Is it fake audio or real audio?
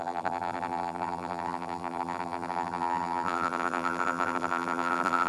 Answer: fake